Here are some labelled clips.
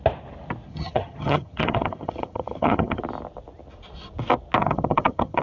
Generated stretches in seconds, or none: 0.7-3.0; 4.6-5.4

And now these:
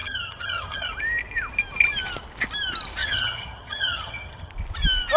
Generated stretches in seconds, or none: 0.0-0.9; 3.0-4.5

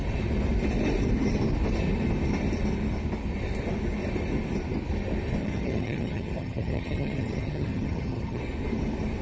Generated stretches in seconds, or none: 5.4-8.4

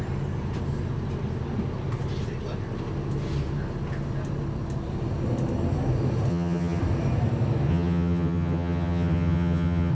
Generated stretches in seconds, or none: 6.3-6.8; 7.7-9.9